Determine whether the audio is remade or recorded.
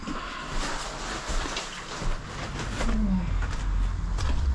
recorded